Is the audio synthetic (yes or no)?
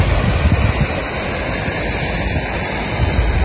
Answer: no